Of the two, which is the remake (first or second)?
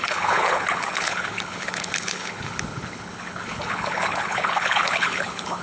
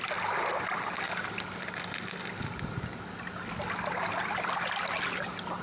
first